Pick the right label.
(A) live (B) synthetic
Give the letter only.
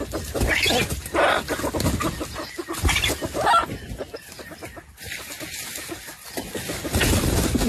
A